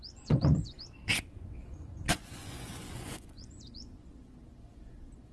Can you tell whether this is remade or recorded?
remade